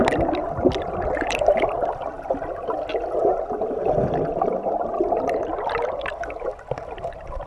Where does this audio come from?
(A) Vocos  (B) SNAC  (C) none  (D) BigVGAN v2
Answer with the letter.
C